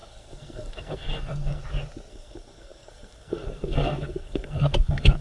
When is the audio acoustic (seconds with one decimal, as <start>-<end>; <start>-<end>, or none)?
1.6-2.1